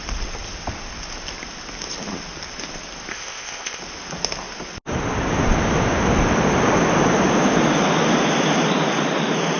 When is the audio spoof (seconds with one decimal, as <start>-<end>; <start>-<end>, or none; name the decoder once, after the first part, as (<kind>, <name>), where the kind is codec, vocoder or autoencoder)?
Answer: 3.1-3.8 (codec, ZipCodec)